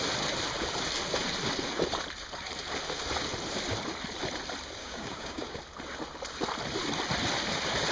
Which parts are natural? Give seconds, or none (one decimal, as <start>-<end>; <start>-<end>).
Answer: 0.0-4.8; 5.6-7.9